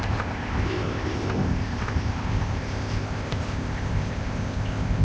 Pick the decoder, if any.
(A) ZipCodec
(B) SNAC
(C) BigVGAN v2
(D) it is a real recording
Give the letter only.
A